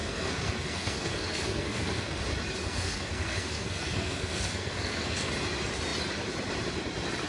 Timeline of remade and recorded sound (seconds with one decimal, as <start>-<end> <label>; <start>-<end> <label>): 0.0-2.2 remade; 2.2-2.6 recorded; 2.6-5.3 remade; 5.3-7.3 recorded